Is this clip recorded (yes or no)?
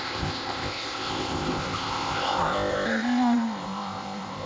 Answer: no